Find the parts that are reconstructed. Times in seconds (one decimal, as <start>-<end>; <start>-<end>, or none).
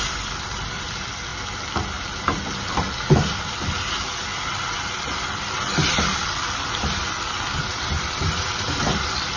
0.0-1.3; 3.3-4.3; 5.7-9.4